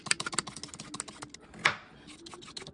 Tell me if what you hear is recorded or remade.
recorded